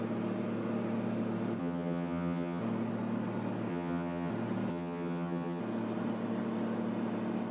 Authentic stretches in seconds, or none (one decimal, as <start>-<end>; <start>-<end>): 0.0-1.6; 2.6-3.7; 4.3-4.7; 5.6-7.5